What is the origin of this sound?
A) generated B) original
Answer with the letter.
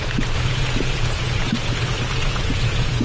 A